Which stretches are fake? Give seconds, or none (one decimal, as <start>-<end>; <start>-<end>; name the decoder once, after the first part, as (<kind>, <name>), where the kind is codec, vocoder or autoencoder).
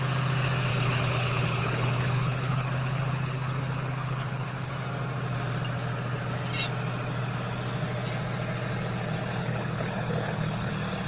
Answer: 0.7-4.7 (codec, HILCodec); 9.4-10.7